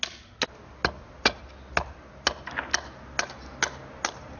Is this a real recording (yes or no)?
yes